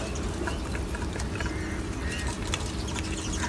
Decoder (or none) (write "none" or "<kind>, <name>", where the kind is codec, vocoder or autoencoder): none